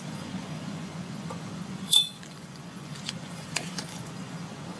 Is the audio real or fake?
fake